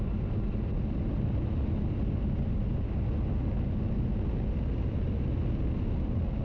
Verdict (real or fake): real